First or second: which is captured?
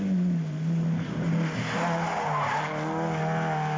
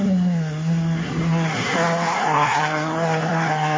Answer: first